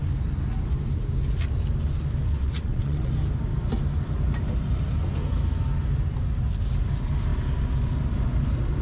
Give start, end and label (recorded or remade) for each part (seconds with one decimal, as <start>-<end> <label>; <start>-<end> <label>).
0.0-2.3 recorded; 2.3-3.1 remade; 3.1-8.8 recorded